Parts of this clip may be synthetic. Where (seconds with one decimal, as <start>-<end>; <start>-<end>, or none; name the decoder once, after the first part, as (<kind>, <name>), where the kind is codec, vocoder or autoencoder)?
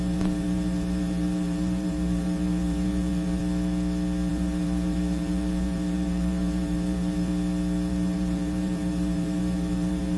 0.0-3.4 (vocoder, BigVGAN v2); 4.3-7.3; 7.9-10.2